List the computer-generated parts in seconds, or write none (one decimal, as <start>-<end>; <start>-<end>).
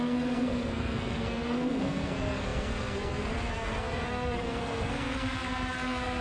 0.0-6.2